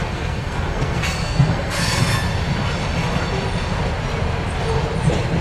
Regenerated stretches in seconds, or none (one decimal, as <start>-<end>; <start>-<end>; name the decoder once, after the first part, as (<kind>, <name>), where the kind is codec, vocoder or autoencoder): 0.0-2.0 (codec, SNAC)